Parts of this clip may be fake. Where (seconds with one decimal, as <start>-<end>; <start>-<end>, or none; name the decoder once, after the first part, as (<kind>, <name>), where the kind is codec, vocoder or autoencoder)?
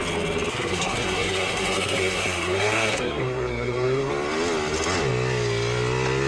0.5-4.1 (codec, SNAC)